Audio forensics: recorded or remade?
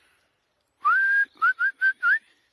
recorded